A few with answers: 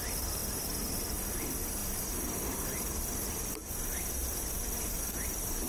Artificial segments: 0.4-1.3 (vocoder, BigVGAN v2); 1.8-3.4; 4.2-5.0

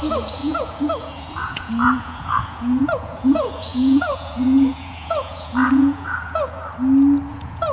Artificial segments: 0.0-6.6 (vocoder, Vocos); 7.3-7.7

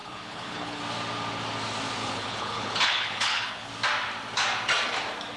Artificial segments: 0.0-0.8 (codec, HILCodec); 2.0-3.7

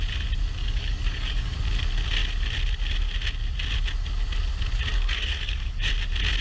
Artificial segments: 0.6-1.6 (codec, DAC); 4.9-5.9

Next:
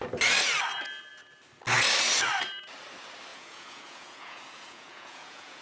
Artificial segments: 3.3-5.6 (vocoder, Vocos)

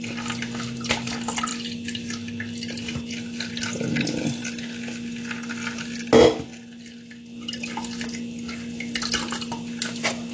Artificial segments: none